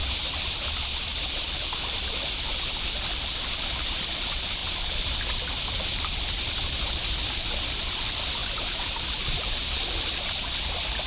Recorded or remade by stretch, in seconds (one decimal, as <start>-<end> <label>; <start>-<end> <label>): 0.0-1.1 remade; 1.1-2.1 recorded; 2.1-11.1 remade